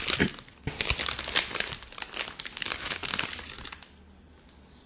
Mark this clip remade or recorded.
recorded